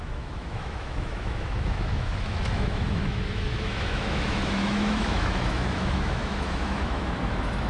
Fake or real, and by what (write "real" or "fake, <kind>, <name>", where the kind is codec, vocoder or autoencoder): fake, autoencoder, DAC-VAE